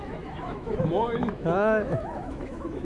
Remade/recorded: remade